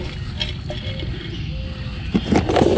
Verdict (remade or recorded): recorded